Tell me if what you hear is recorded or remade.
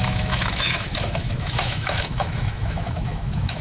remade